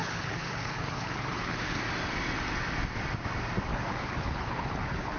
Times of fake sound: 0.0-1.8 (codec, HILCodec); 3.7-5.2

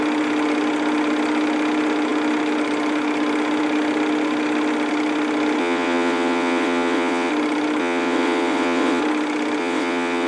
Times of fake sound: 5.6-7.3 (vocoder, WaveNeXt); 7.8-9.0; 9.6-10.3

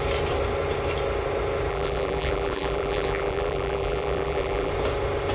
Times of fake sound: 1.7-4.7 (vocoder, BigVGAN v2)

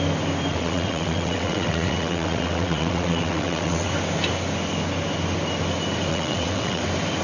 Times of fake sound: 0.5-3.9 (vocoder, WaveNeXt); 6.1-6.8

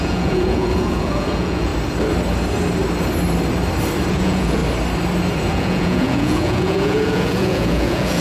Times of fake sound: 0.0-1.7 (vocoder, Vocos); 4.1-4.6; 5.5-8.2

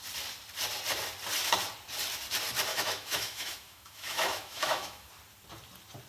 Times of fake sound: 2.7-5.1 (autoencoder, DAC-VAE)

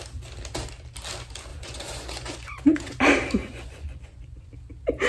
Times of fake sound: 1.5-3.0 (vocoder, Vocos); 3.4-4.5